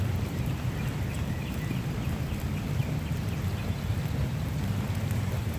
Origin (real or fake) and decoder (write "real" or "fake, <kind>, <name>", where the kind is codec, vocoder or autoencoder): fake, vocoder, BigVGAN v2